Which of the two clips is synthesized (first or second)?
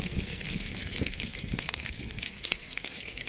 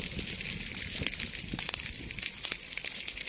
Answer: first